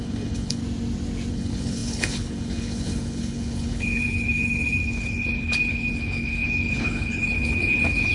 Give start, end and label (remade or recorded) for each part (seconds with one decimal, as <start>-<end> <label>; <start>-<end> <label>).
0.0-0.6 remade; 0.6-1.3 recorded; 1.3-8.1 remade